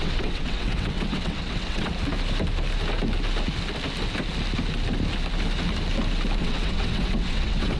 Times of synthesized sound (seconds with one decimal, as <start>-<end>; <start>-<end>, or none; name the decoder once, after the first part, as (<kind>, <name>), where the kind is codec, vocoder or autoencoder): 0.0-1.9 (vocoder, WaveNeXt); 6.4-7.8